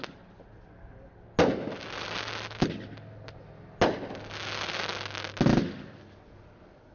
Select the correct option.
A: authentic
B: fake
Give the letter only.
A